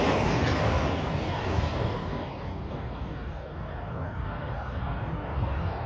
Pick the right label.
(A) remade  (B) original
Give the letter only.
A